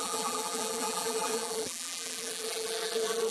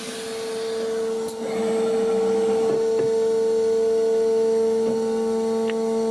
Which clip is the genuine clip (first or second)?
second